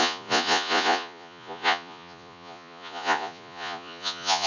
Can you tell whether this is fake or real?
fake